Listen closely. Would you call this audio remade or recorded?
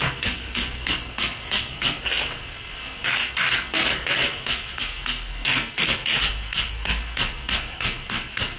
remade